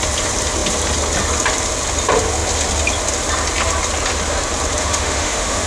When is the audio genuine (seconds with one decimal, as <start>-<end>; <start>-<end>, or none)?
0.0-4.8